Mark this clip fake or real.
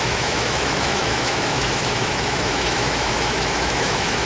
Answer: fake